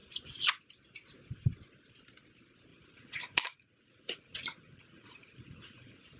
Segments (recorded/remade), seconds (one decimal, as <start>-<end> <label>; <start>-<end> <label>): 0.0-2.7 recorded; 2.7-6.2 remade